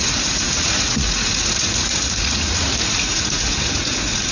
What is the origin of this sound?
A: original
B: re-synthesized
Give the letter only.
B